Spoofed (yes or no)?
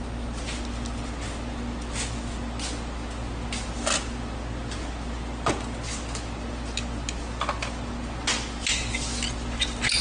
no